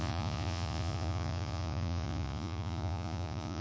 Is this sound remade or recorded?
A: remade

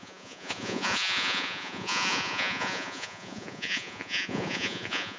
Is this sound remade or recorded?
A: remade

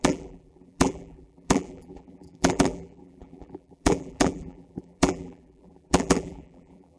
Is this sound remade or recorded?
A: remade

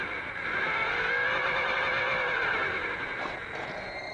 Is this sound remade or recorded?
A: recorded